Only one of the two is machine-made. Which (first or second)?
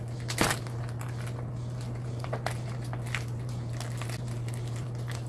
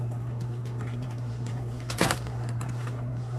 second